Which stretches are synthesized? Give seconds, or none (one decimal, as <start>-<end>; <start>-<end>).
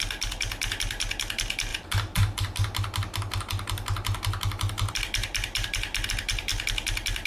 none